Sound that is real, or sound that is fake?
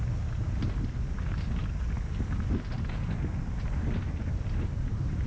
real